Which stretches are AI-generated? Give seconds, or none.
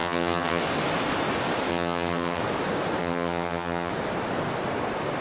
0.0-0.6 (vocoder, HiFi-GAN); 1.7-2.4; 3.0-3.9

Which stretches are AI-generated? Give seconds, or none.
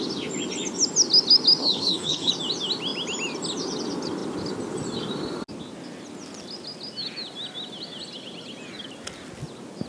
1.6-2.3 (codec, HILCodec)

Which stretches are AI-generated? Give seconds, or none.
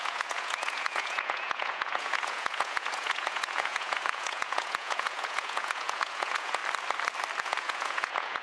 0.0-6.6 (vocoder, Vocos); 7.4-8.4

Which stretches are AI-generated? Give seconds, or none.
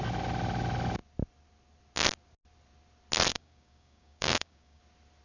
3.3-4.8 (codec, DAC)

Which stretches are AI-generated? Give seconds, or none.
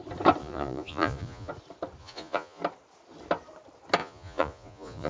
0.4-1.5 (vocoder, Vocos); 2.0-2.6; 4.0-5.1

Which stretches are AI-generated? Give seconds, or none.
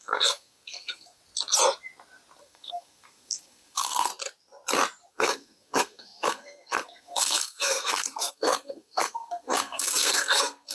0.0-1.2 (codec, SNAC); 2.4-4.1; 5.1-10.7